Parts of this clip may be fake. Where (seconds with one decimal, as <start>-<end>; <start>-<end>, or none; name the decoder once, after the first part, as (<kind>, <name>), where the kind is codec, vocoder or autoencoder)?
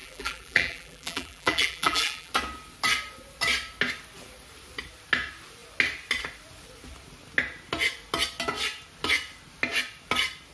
0.0-2.3 (vocoder, BigVGAN v2)